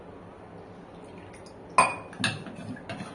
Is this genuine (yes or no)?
yes